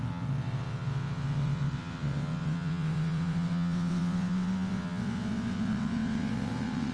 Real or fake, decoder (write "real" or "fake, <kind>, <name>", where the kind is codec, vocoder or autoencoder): fake, vocoder, WaveNeXt